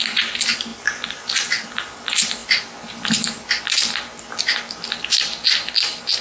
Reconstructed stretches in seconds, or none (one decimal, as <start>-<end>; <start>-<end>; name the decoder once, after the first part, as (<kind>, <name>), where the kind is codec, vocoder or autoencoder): none